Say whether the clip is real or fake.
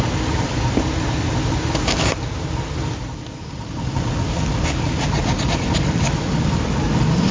real